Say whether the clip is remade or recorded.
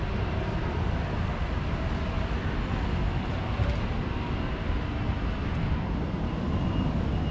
recorded